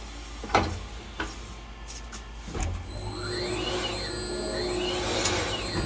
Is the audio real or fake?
real